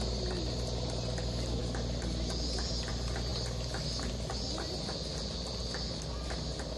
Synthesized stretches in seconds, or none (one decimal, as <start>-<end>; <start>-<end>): none